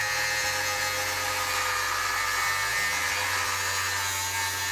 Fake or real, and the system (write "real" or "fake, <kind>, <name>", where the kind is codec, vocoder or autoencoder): real